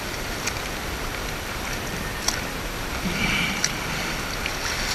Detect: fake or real real